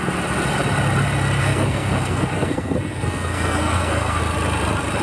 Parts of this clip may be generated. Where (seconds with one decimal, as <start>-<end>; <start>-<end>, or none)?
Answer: 1.4-4.2